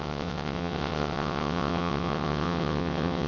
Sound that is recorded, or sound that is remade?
remade